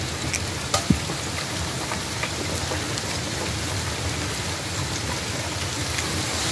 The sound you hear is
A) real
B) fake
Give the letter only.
A